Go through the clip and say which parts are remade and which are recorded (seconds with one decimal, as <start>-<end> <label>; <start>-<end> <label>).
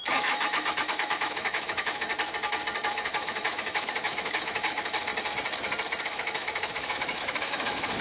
0.0-2.1 remade; 2.1-2.9 recorded; 2.9-5.1 remade; 5.1-6.0 recorded; 6.0-8.0 remade